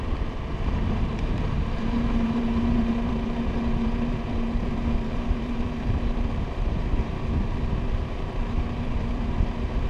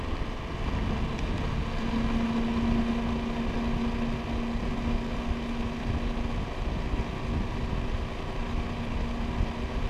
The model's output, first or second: first